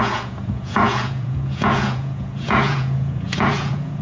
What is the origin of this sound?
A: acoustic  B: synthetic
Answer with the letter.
B